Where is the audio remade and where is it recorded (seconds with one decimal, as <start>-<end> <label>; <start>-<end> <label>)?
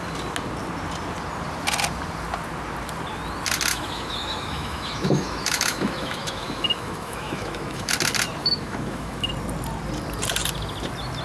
0.0-3.7 recorded; 3.7-7.9 remade; 7.9-8.4 recorded; 8.4-9.3 remade; 9.3-11.2 recorded